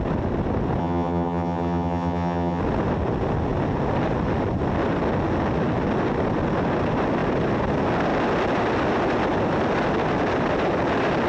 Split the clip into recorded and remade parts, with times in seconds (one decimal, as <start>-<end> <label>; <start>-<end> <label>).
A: 0.0-0.8 recorded; 0.8-2.6 remade; 2.6-11.3 recorded